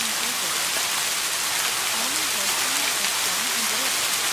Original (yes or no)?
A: yes